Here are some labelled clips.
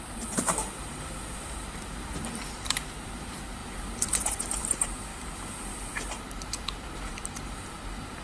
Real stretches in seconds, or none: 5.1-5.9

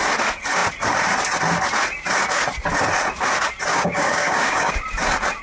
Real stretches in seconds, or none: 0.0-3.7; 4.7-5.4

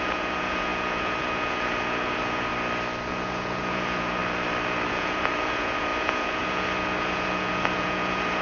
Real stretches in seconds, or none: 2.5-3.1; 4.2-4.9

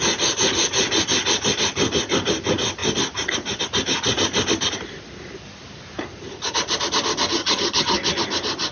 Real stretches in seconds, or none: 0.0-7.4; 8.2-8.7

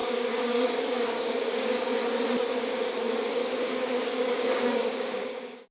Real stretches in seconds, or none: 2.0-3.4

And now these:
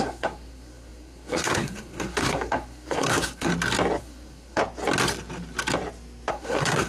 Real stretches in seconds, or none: 3.5-4.0; 4.6-6.3

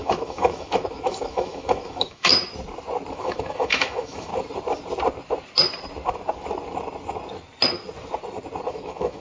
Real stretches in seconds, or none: 2.3-3.1; 4.3-8.7

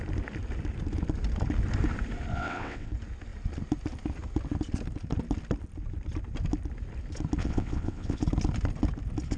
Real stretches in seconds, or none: 0.0-2.3; 2.9-7.4; 8.2-9.4